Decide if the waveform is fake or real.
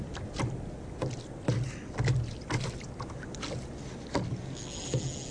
real